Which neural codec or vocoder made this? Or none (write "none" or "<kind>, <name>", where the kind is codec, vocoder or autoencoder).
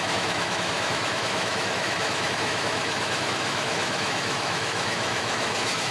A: autoencoder, DAC-VAE